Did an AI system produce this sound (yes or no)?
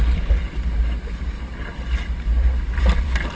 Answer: no